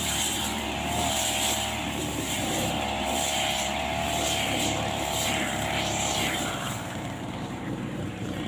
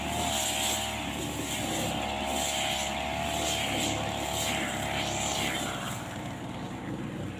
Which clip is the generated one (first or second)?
first